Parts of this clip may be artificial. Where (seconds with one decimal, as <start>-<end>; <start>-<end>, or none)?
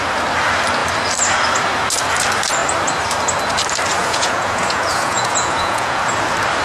4.0-6.0